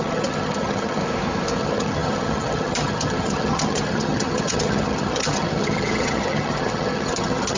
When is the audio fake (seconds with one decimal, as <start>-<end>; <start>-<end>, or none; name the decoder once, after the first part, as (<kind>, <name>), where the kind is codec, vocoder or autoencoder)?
0.0-1.0 (vocoder, HiFi-GAN); 1.6-7.6